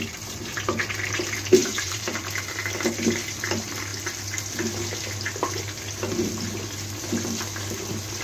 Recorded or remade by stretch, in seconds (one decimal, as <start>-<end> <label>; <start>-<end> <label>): 0.0-1.6 recorded; 1.6-2.5 remade; 2.5-8.2 recorded